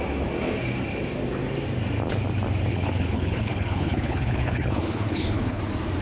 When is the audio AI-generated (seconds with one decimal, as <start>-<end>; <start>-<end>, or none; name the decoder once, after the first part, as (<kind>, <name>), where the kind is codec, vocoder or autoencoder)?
2.7-5.6 (codec, HILCodec)